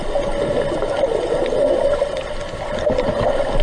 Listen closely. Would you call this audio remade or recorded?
recorded